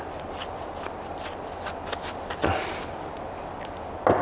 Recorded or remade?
recorded